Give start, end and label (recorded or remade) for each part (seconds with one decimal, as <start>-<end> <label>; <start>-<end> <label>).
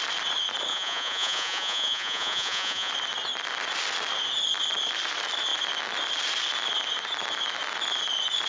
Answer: 0.0-0.7 recorded; 0.7-2.9 remade; 2.9-8.5 recorded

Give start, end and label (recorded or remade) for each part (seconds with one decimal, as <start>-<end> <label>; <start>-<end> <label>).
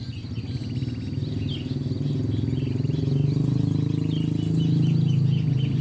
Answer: 0.0-5.8 recorded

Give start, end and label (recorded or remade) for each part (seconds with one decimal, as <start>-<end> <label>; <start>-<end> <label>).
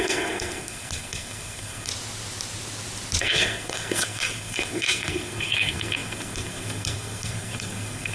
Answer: 0.0-1.9 remade; 1.9-3.2 recorded; 3.2-8.1 remade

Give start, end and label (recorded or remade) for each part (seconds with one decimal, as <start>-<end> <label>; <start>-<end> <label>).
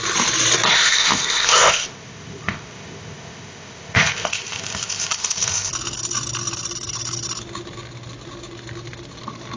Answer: 0.0-0.7 recorded; 0.7-5.7 remade; 5.7-9.6 recorded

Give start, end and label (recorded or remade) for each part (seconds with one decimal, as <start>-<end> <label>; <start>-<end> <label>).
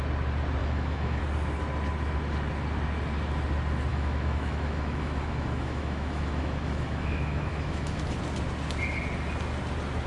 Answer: 0.0-0.6 recorded; 0.6-1.2 remade; 1.2-3.9 recorded; 3.9-8.0 remade; 8.0-10.1 recorded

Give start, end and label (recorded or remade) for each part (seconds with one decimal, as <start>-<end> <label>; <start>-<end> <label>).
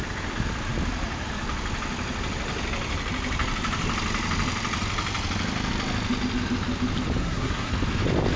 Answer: 0.0-7.2 recorded; 7.2-7.7 remade; 7.7-8.4 recorded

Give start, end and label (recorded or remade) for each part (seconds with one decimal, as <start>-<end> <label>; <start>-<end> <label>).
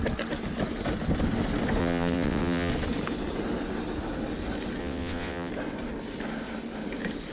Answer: 0.0-1.8 recorded; 1.8-2.7 remade; 2.7-4.8 recorded; 4.8-5.5 remade; 5.5-7.3 recorded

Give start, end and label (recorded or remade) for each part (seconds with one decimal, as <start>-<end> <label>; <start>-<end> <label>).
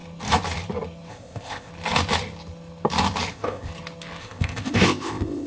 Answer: 0.0-1.1 recorded; 1.1-1.7 remade; 1.7-3.3 recorded; 3.3-3.7 remade; 3.7-4.2 recorded; 4.2-5.5 remade